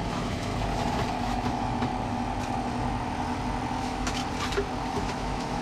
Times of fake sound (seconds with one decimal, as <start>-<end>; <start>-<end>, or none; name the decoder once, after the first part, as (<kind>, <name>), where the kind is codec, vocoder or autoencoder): 0.0-0.5 (autoencoder, DAC-VAE); 1.2-1.9; 3.8-4.2; 4.9-5.6